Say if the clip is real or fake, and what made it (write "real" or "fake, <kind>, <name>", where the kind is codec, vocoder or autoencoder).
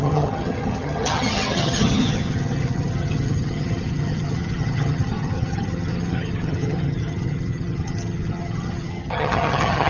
fake, vocoder, HiFi-GAN